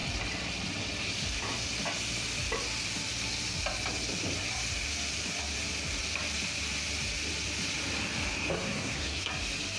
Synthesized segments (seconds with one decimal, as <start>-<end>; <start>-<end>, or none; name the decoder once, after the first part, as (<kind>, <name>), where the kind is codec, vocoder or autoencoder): 8.5-9.3 (codec, SNAC)